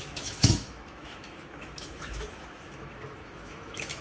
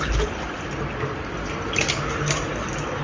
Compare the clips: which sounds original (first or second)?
second